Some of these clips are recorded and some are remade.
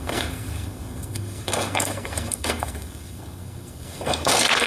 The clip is remade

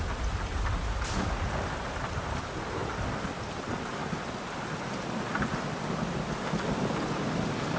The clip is recorded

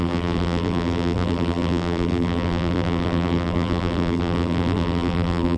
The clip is remade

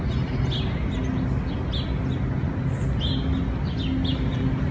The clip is recorded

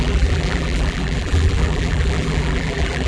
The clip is remade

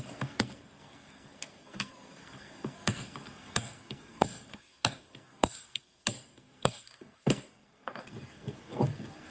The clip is remade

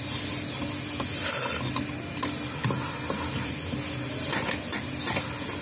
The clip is recorded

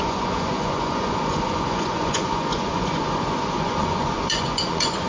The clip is remade